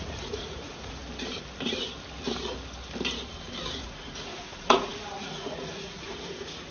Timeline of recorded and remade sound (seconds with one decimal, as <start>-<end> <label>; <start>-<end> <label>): 0.0-1.0 remade; 1.0-3.7 recorded; 3.7-6.7 remade